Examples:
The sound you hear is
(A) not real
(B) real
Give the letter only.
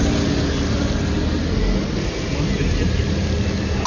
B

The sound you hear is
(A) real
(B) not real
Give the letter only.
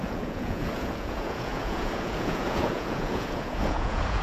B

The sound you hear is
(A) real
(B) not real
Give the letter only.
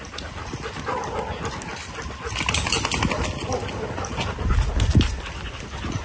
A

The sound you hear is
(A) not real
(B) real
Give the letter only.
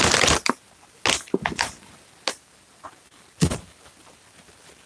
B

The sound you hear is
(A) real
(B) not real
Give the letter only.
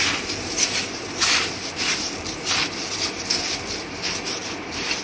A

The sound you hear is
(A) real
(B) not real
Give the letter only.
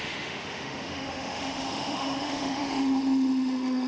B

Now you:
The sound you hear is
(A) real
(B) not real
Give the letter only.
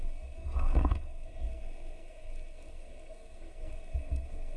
B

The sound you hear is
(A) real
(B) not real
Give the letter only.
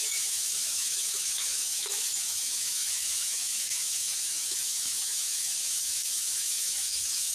B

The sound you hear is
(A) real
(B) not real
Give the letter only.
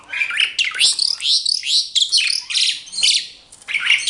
A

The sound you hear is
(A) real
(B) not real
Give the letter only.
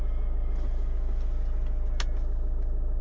A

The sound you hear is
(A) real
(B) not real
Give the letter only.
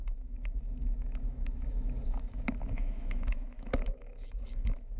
B